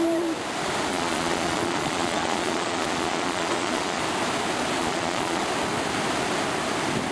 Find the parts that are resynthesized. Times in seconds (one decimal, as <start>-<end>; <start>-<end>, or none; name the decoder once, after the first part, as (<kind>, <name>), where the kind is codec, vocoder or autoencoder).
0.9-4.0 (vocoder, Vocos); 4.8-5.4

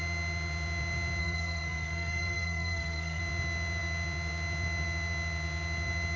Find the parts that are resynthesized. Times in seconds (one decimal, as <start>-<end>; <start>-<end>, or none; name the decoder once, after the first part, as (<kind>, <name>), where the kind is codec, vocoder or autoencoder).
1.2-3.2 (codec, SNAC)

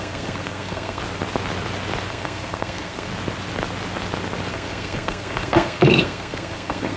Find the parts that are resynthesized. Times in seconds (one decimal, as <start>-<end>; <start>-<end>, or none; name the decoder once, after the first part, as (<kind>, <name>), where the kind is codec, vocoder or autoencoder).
0.0-1.0 (codec, SNAC); 2.1-3.1; 4.5-7.0

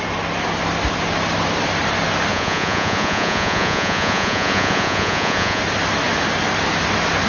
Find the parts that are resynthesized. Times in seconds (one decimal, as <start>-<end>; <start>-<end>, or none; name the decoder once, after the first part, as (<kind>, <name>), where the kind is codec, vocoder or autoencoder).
2.3-5.6 (vocoder, Vocos)

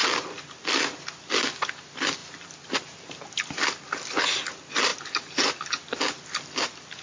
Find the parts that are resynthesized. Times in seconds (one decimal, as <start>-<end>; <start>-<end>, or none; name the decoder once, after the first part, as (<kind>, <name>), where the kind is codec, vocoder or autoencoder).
4.9-5.7 (vocoder, BigVGAN v2)

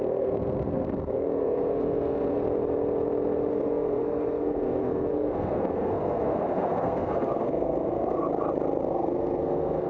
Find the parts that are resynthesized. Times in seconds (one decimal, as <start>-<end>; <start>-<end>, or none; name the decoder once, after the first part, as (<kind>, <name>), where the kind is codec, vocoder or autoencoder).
0.0-2.4 (codec, SNAC); 3.5-8.2; 8.8-9.9

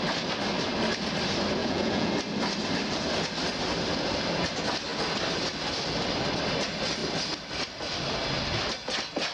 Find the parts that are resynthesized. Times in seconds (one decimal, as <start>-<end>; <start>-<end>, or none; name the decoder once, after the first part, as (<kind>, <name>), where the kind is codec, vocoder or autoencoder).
1.6-2.1 (vocoder, Vocos)

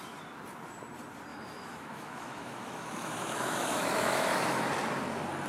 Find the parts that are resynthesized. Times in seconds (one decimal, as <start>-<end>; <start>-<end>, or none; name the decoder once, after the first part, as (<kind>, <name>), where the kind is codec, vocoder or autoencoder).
1.3-4.6 (autoencoder, DAC-VAE)